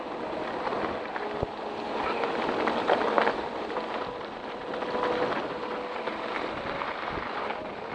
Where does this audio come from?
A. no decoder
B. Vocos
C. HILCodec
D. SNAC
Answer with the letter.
A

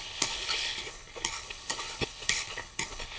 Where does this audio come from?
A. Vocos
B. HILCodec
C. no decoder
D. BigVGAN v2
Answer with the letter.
B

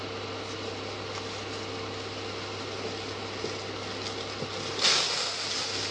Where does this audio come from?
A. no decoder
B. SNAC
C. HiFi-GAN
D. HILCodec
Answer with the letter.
A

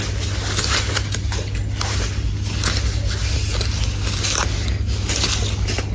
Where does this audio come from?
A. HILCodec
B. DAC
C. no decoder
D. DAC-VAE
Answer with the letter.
C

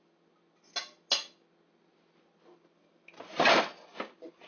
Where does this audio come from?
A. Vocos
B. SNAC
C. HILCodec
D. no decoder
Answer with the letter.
D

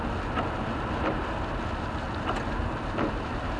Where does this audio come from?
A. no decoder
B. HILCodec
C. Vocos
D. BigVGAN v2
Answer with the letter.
A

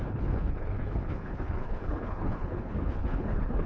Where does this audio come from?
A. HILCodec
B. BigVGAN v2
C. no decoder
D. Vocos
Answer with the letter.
A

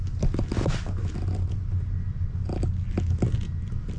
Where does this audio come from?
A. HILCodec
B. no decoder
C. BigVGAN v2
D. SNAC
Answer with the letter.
B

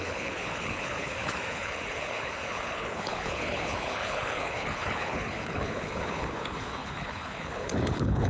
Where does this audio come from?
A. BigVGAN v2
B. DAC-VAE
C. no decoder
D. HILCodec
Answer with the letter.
D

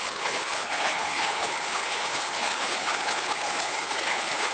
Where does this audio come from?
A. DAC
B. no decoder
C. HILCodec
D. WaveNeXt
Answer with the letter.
C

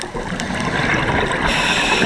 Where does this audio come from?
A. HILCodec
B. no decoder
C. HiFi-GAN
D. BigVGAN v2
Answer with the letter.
B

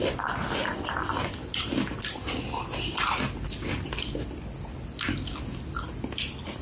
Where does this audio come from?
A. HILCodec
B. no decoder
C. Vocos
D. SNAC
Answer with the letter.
B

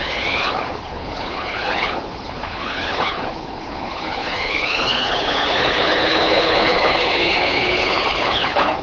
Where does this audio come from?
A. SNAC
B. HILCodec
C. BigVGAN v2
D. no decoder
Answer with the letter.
B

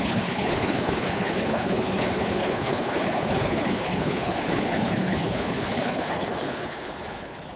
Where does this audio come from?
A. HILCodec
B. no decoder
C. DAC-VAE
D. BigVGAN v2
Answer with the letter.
A